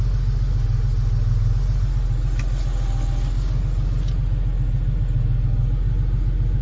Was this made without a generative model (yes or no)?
yes